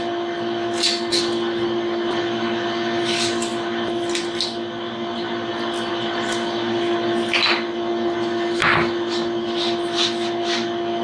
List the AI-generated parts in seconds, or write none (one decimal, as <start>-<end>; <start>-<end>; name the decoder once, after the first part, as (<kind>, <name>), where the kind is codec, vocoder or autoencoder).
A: none